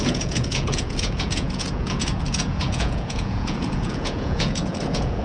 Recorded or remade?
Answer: remade